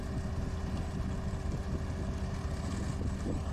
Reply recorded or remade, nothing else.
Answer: recorded